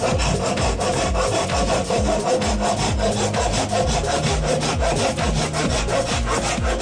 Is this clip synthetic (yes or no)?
no